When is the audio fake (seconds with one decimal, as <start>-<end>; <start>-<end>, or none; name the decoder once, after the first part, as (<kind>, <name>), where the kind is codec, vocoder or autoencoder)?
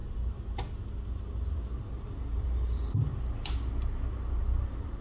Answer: 1.8-3.1 (vocoder, BigVGAN v2); 4.6-5.0